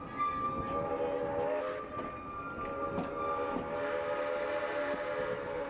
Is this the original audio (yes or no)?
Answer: yes